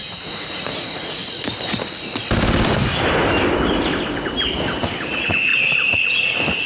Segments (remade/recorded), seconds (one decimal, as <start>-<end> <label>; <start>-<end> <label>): 0.0-1.2 remade; 1.2-5.0 recorded; 5.0-5.5 remade; 5.5-6.1 recorded; 6.1-6.7 remade